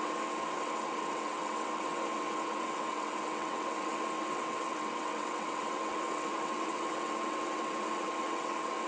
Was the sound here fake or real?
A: fake